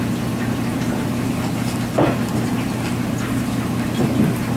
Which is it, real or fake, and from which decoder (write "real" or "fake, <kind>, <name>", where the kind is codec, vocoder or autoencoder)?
real